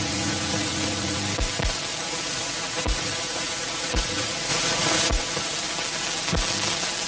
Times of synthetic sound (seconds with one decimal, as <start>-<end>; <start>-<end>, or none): 0.0-1.2; 2.0-5.5

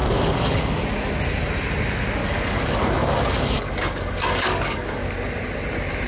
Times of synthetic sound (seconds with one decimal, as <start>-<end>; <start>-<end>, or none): 0.0-0.8; 2.2-5.1

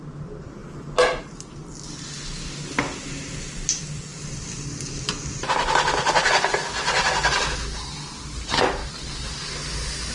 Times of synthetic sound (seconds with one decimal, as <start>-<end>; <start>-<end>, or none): none

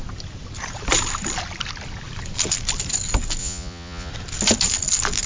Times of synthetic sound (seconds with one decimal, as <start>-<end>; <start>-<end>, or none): 3.4-4.1